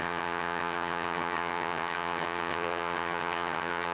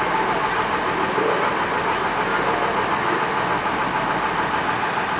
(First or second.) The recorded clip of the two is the second